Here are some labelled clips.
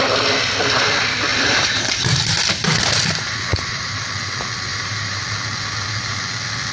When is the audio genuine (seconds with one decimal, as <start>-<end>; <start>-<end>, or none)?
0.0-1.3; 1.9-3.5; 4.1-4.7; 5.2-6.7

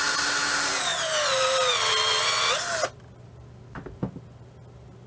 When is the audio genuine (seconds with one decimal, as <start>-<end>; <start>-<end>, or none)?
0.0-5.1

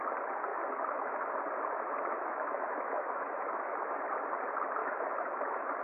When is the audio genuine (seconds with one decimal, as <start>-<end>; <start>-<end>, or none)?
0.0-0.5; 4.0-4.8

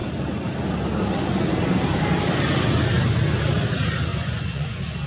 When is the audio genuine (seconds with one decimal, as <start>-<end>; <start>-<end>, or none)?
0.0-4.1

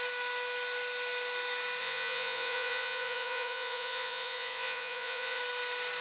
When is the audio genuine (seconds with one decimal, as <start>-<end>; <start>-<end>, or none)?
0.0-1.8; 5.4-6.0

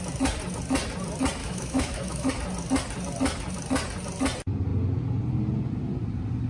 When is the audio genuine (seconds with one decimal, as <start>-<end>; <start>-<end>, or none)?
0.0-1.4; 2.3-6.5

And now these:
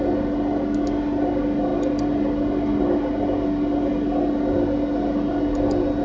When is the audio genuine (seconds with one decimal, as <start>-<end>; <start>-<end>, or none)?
0.0-6.0

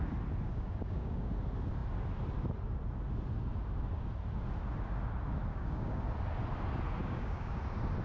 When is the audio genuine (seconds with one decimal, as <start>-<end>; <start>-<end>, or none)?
0.0-0.5; 1.3-5.5; 6.0-7.0; 7.6-8.0